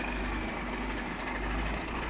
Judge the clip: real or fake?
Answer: real